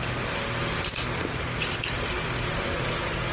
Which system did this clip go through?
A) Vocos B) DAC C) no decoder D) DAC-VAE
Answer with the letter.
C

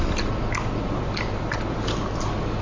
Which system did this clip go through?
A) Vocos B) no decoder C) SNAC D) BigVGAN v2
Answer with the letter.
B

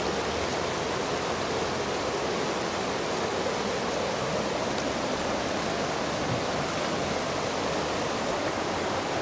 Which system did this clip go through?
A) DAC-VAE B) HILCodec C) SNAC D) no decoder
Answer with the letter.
D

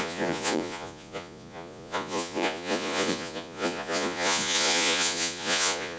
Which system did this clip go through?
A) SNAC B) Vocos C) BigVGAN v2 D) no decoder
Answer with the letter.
B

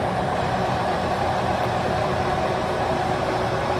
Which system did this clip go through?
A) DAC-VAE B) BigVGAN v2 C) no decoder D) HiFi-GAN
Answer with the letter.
B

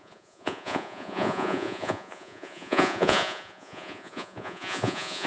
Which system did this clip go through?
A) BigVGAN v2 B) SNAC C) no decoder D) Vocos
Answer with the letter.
D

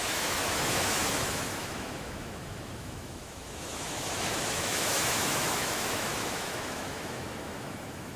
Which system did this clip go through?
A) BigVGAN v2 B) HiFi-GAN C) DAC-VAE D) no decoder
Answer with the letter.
C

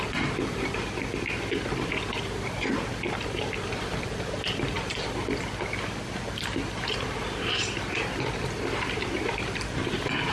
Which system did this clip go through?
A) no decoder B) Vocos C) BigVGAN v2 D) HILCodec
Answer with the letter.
C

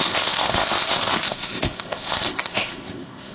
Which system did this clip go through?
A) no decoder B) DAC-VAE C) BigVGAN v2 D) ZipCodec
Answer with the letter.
D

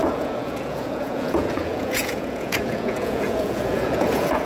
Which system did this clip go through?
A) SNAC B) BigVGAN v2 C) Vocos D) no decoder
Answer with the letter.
C